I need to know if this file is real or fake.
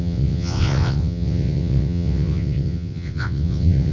fake